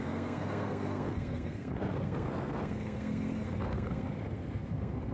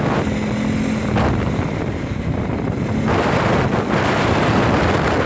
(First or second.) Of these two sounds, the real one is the second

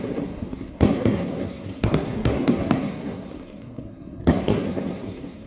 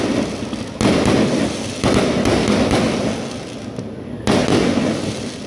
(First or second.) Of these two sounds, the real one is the second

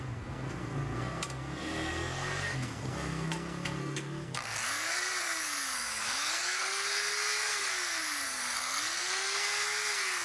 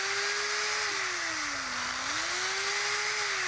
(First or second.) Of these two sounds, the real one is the second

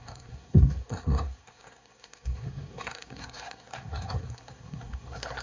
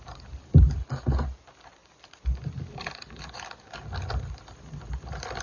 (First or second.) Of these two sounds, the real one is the second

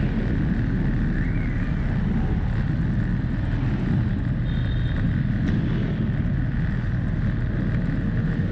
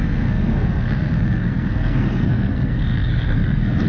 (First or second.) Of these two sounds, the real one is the first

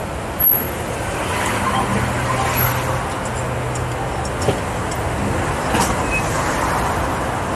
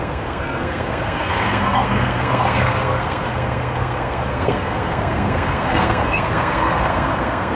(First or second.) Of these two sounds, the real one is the first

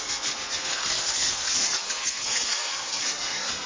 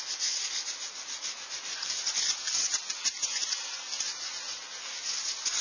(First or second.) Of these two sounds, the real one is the second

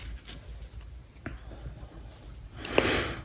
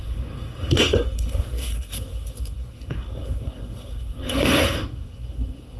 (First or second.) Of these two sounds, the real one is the first